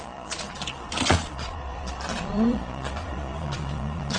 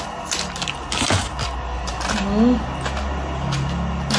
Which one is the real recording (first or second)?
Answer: second